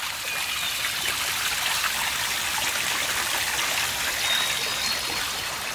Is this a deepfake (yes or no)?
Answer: no